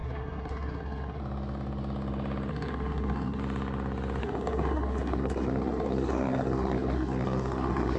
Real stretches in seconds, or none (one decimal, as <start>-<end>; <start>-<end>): 1.2-2.5; 3.4-4.2